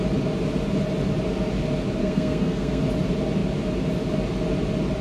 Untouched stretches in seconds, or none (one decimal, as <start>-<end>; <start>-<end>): 0.0-2.0; 2.8-5.0